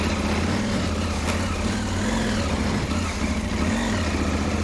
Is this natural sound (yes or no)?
yes